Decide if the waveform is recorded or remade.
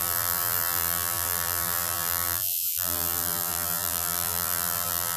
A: remade